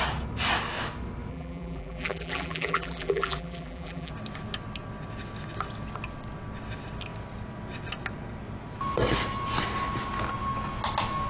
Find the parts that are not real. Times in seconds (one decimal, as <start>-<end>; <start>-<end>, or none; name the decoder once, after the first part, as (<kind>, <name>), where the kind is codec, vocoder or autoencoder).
1.3-4.1 (vocoder, BigVGAN v2)